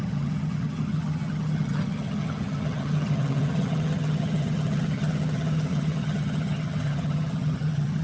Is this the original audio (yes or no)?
no